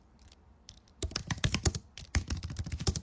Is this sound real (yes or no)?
no